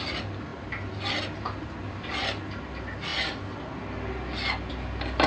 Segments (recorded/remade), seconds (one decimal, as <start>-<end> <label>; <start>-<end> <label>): 0.0-5.3 recorded